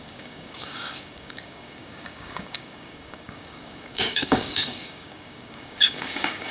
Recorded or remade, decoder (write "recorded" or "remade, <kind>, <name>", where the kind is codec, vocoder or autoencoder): remade, codec, DAC